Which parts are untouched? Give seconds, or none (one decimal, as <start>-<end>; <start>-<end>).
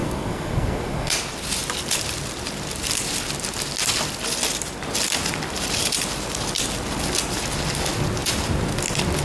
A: 1.1-9.2